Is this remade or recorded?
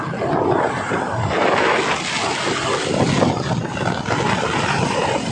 recorded